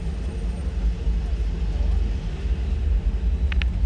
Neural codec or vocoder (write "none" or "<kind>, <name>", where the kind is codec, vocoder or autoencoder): none